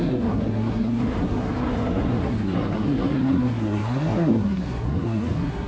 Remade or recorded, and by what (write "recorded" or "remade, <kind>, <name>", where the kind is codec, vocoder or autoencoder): remade, codec, SNAC